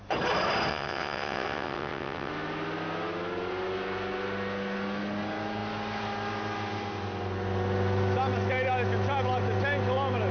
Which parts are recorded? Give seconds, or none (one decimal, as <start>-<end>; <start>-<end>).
0.0-0.7; 2.3-10.3